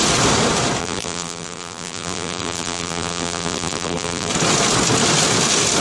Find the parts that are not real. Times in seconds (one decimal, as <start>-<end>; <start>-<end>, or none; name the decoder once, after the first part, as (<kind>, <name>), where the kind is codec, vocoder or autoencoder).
0.8-4.3 (vocoder, BigVGAN v2)